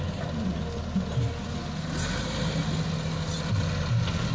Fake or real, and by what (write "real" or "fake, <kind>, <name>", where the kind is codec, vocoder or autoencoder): real